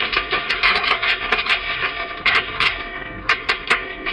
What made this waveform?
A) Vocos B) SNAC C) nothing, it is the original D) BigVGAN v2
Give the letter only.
B